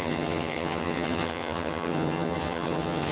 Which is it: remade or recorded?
remade